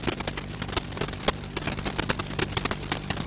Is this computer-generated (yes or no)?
no